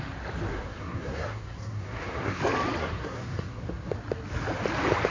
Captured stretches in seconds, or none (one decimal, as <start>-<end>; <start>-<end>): 0.0-0.5; 2.4-2.8; 3.9-5.1